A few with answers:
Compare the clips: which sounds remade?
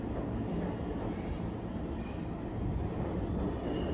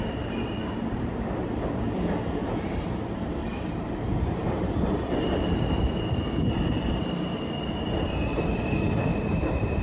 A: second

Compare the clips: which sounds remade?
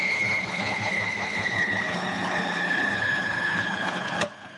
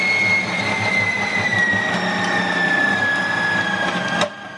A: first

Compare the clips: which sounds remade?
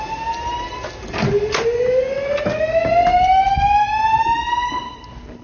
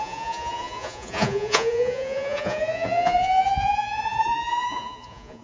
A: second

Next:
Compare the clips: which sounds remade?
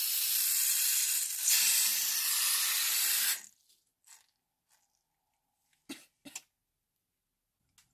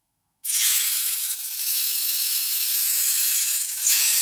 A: second